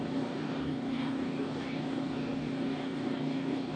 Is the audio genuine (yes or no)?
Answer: no